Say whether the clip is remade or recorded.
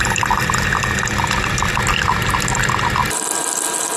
remade